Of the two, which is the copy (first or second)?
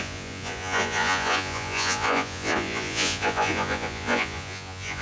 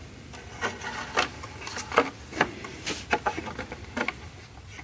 first